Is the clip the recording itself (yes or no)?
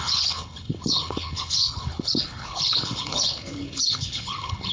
no